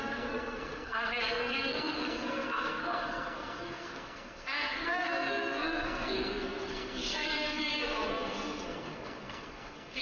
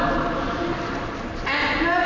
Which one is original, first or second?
second